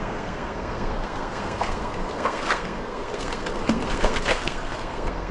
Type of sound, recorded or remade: remade